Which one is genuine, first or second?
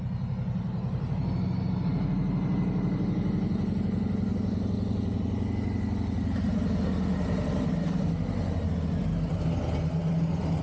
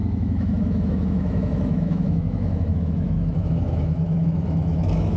first